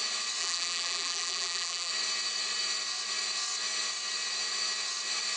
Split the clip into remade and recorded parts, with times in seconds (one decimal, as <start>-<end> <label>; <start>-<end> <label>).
0.0-0.4 recorded; 0.4-1.9 remade; 1.9-5.4 recorded